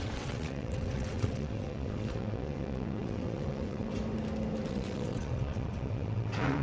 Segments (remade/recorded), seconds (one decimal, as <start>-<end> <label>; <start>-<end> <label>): 0.0-3.9 remade; 3.9-4.7 recorded; 4.7-6.6 remade